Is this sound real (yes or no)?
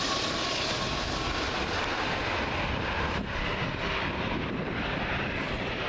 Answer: no